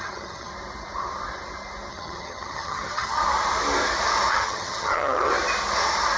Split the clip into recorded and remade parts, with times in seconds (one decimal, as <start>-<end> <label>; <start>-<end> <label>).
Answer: 0.0-0.5 remade; 0.5-1.9 recorded; 1.9-3.2 remade; 3.2-4.3 recorded; 4.3-5.3 remade; 5.3-6.2 recorded